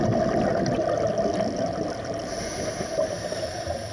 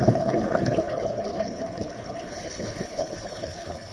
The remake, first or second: second